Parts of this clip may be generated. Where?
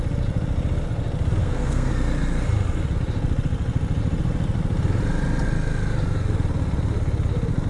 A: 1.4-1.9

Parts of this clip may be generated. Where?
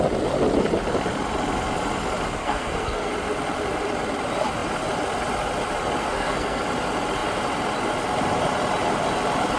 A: 2.4-3.1; 6.0-6.6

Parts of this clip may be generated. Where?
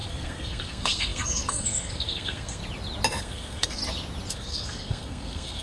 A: 0.0-2.6; 3.2-3.8; 4.3-5.6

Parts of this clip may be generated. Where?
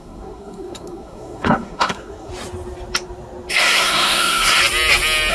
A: 0.0-2.3; 3.5-4.6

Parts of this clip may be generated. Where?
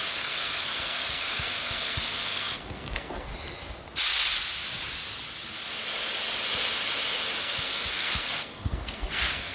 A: 0.0-3.3; 7.4-9.5